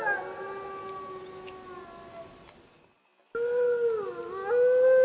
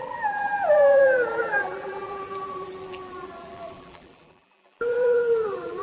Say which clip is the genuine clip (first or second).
first